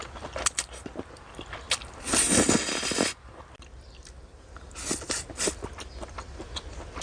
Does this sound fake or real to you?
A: real